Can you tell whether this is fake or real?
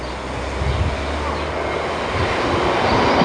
real